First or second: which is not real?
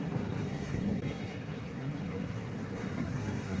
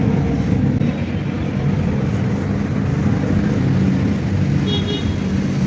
first